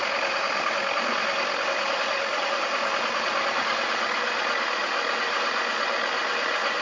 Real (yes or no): yes